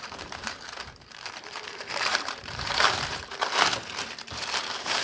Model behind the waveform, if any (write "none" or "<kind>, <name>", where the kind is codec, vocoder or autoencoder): vocoder, BigVGAN v2